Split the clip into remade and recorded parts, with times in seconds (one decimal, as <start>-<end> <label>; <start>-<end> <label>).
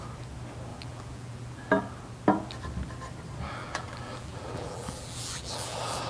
0.0-0.7 recorded; 0.7-1.8 remade; 1.8-3.6 recorded; 3.6-6.1 remade